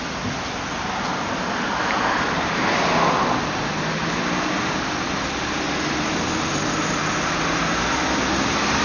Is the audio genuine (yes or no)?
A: yes